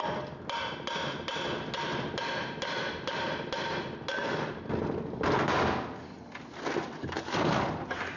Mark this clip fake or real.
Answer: real